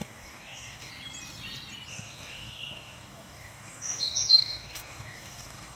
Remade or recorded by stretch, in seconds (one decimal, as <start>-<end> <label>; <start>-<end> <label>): 0.0-0.9 remade; 0.9-1.9 recorded; 1.9-5.8 remade